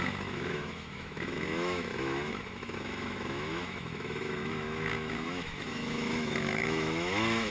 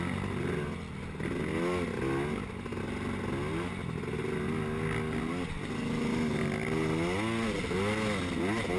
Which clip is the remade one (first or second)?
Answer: first